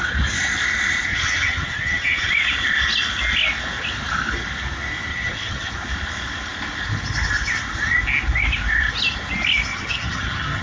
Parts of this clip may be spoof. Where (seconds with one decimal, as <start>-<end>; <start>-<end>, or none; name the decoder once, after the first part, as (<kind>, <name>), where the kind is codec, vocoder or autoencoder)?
1.1-2.3 (vocoder, HiFi-GAN); 5.1-5.7; 9.7-10.6